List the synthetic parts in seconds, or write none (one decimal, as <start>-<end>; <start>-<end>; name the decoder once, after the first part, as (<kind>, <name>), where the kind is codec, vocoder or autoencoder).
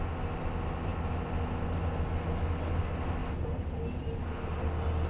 none